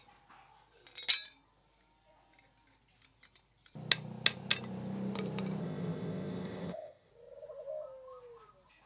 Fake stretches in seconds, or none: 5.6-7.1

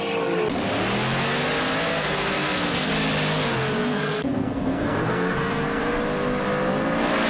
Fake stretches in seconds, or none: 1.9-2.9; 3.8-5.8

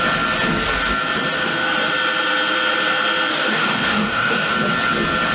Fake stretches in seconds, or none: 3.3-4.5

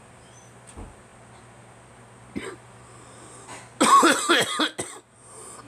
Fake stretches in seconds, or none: none